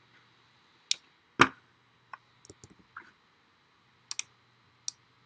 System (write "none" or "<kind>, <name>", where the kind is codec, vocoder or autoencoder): none